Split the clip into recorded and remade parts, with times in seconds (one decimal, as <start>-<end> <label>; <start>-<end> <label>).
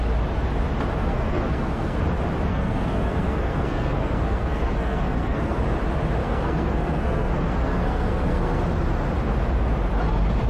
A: 0.0-1.0 recorded; 1.0-2.0 remade; 2.0-2.5 recorded; 2.5-5.6 remade; 5.6-6.2 recorded; 6.2-8.6 remade; 8.6-10.5 recorded